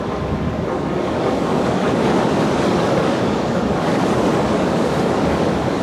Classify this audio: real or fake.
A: fake